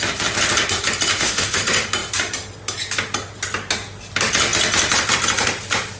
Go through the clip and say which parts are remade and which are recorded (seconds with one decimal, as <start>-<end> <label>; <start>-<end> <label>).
0.0-1.1 recorded; 1.1-1.6 remade; 1.6-6.0 recorded